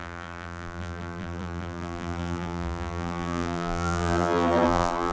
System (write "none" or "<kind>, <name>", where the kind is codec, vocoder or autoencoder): vocoder, BigVGAN v2